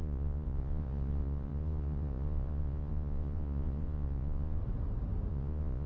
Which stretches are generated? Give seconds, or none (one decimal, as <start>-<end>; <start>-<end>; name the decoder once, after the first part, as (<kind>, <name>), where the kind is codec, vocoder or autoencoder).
0.0-4.6 (vocoder, Vocos); 5.3-5.9